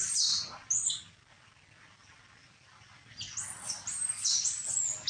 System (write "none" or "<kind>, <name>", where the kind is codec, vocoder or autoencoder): none